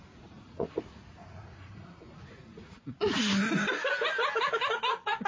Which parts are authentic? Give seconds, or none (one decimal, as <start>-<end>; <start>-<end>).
3.2-5.3